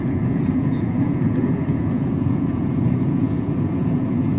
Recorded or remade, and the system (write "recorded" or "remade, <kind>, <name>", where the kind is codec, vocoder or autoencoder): remade, vocoder, Vocos